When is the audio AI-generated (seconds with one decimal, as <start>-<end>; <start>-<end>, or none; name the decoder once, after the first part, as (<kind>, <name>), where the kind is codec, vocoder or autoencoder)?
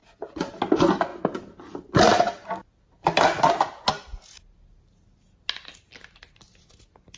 0.0-0.5 (vocoder, Vocos)